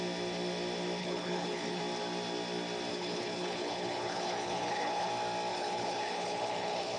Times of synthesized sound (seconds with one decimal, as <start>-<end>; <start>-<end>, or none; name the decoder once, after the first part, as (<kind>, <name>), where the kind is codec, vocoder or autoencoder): 1.0-1.8 (codec, HILCodec); 2.9-5.1; 5.5-7.0